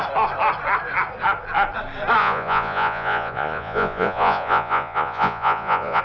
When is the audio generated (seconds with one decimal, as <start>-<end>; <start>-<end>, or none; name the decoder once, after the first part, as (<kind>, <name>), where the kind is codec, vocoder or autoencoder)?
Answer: 2.2-6.0 (vocoder, Vocos)